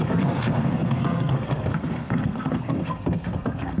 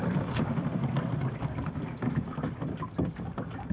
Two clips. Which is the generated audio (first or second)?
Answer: first